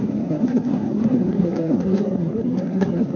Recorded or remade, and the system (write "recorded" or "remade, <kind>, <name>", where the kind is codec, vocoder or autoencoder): remade, codec, SNAC